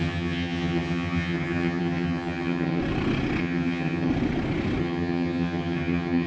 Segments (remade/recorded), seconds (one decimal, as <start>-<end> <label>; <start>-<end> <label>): 0.0-2.8 remade; 2.8-3.4 recorded; 3.4-4.1 remade; 4.1-4.8 recorded; 4.8-6.3 remade